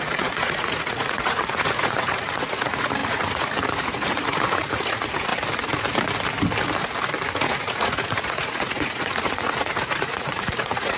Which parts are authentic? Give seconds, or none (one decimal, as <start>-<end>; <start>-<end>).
5.3-7.3